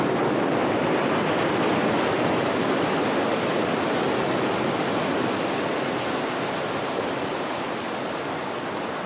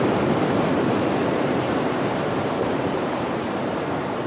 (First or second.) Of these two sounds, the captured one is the first